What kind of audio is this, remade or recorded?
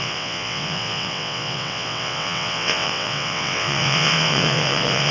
remade